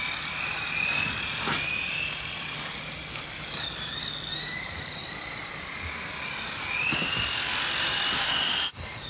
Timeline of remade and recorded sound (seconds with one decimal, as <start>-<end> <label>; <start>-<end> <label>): 0.0-4.3 recorded; 4.3-5.0 remade; 5.0-9.1 recorded